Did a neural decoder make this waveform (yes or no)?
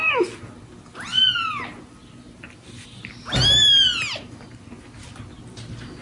no